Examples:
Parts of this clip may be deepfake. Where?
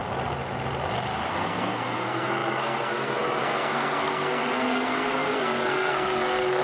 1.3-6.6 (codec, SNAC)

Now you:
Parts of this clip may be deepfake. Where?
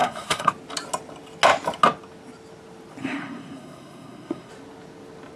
0.0-0.5 (codec, SNAC); 3.0-4.5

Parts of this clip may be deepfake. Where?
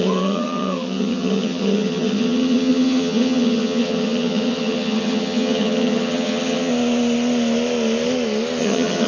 0.0-6.7 (vocoder, HiFi-GAN); 8.6-9.1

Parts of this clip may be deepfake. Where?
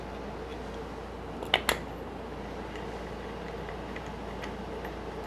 none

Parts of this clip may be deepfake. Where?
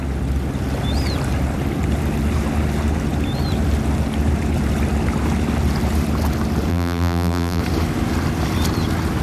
6.7-7.6 (vocoder, BigVGAN v2)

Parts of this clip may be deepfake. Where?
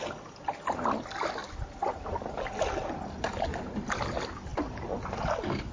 none